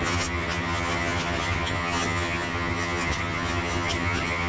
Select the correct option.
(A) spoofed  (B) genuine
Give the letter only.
A